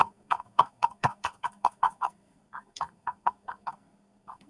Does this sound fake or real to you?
fake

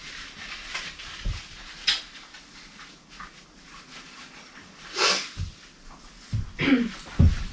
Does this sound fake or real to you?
real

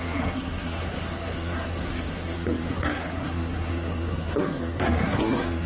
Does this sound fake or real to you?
fake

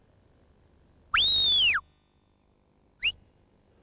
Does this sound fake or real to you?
real